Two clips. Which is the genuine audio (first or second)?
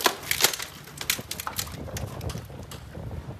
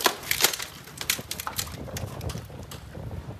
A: first